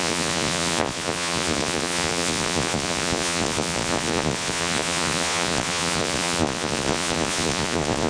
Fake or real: fake